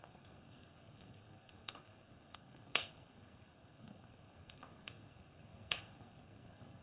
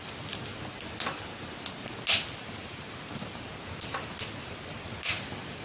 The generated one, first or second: first